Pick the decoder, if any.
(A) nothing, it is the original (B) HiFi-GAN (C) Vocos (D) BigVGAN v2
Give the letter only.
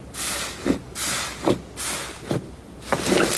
A